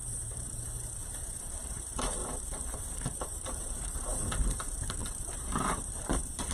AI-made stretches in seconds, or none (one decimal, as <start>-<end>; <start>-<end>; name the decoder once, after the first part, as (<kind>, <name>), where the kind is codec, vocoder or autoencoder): 0.0-6.5 (vocoder, BigVGAN v2)